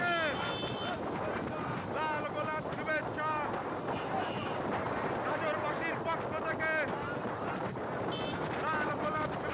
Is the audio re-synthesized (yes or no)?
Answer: no